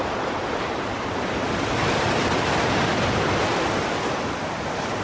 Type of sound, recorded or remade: recorded